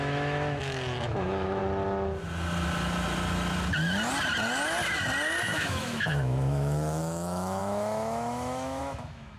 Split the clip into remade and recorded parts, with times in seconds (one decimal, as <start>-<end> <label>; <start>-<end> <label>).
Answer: 0.0-1.6 remade; 1.6-5.4 recorded; 5.4-9.4 remade